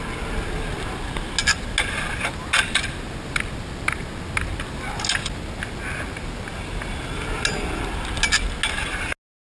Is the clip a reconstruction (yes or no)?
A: no